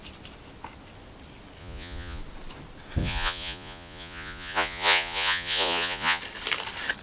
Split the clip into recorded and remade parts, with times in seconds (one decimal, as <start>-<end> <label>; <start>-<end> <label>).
0.0-1.6 recorded; 1.6-2.2 remade; 2.2-3.0 recorded; 3.0-6.2 remade; 6.2-7.0 recorded